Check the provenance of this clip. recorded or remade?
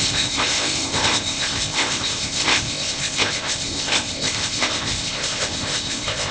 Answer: remade